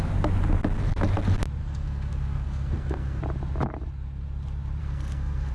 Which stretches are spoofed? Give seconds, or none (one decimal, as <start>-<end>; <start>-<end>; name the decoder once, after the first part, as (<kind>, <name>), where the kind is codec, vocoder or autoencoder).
1.6-3.2 (codec, SNAC); 4.8-5.5